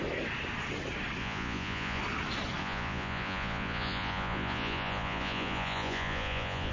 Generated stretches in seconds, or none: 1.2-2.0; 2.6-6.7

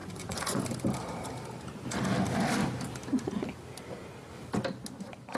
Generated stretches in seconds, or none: 0.0-0.6

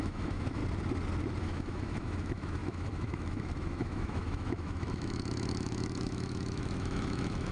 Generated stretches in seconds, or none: 0.0-0.6; 1.4-7.5

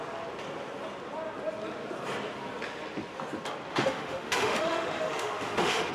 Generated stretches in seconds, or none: 3.7-5.9

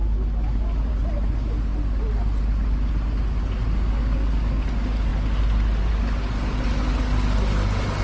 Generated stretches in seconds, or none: none

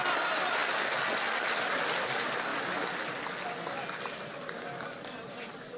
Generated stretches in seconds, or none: none

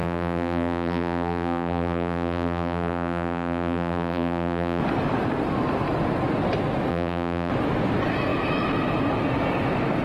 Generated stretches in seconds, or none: 0.0-4.8; 6.9-7.5

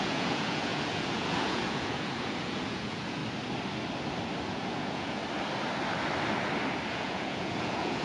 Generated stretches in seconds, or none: 0.0-3.2; 4.5-5.2; 6.9-8.0